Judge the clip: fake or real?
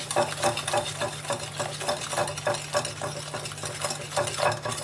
real